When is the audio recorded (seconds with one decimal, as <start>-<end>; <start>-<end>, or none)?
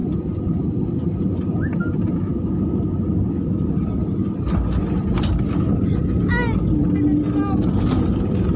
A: 0.0-8.6